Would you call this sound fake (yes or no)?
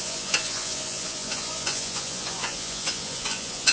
yes